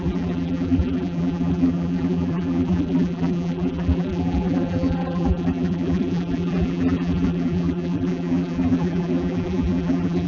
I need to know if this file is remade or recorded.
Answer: remade